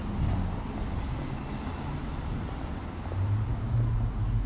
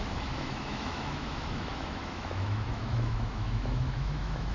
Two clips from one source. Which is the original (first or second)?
first